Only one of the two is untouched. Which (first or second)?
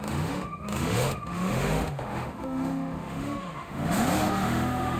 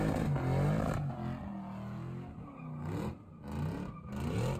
second